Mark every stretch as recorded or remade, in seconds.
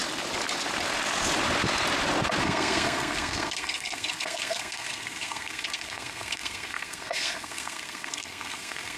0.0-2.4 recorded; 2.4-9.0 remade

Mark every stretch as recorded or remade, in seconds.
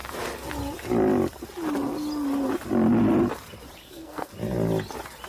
0.0-3.8 recorded; 3.8-4.3 remade; 4.3-5.3 recorded